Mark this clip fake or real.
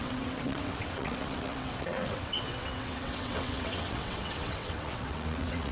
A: fake